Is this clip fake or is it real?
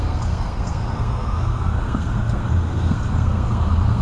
fake